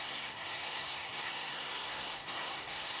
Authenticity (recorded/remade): remade